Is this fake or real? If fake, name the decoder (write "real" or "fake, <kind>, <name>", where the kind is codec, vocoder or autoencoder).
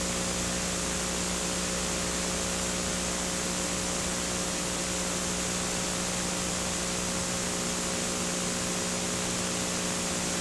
real